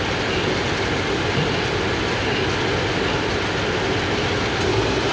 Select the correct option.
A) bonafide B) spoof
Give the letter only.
A